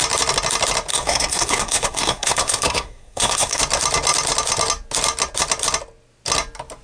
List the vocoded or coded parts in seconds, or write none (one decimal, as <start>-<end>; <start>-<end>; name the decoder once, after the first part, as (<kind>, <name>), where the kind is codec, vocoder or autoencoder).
0.9-3.6 (codec, SNAC)